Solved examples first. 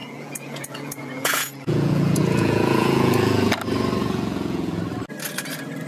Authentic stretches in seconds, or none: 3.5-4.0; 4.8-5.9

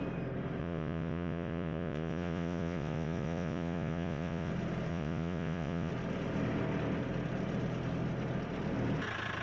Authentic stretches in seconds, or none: 0.0-0.6; 4.5-4.9; 5.9-9.4